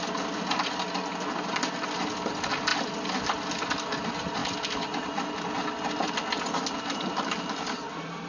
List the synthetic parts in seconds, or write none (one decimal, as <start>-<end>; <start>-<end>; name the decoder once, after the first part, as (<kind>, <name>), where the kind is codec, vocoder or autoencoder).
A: none